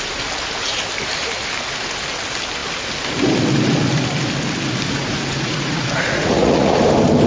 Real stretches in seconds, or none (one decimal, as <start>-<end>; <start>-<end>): 0.0-4.9; 6.8-7.3

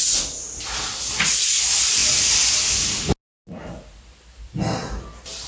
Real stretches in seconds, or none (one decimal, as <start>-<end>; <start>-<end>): 0.0-5.5